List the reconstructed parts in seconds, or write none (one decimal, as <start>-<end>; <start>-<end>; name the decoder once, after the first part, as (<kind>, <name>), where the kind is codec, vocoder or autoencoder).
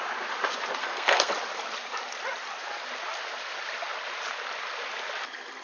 0.8-1.3 (codec, SNAC)